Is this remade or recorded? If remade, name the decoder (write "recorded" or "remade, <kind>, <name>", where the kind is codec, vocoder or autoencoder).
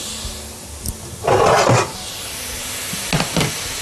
recorded